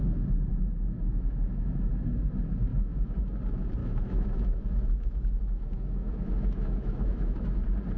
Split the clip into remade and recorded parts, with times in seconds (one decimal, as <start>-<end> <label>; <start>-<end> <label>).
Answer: 0.0-0.5 recorded; 0.5-1.9 remade; 1.9-2.7 recorded; 2.7-3.2 remade; 3.2-3.8 recorded; 3.8-7.6 remade; 7.6-8.0 recorded